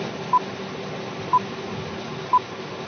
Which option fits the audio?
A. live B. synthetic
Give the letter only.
A